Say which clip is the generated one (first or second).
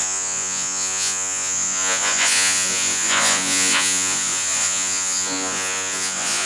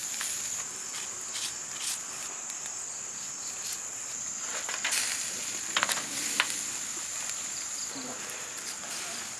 first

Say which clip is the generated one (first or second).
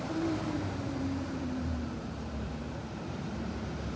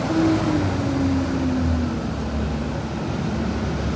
first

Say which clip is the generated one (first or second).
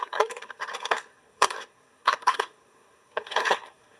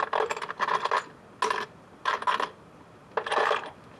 first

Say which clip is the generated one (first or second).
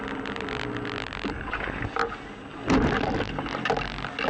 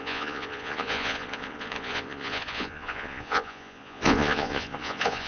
second